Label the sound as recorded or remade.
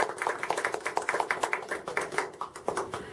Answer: recorded